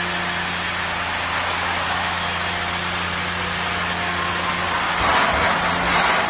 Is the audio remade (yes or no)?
no